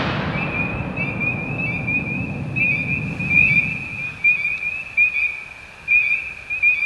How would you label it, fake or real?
real